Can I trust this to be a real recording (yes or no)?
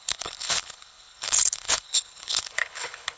no